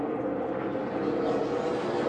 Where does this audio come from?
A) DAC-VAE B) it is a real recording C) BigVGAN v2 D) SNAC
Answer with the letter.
B